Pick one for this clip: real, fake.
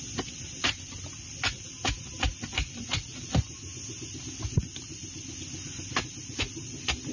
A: real